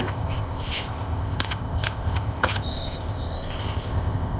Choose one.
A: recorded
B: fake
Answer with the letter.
B